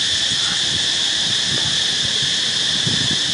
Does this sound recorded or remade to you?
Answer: recorded